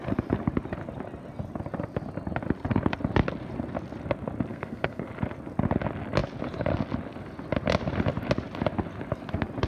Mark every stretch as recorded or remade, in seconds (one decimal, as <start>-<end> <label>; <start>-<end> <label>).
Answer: 0.0-4.5 recorded; 4.5-5.1 remade; 5.1-9.7 recorded